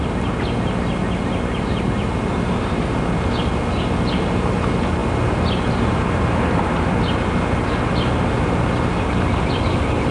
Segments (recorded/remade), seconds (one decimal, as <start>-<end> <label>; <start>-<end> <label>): 0.0-2.3 recorded; 2.3-3.0 remade; 3.0-10.1 recorded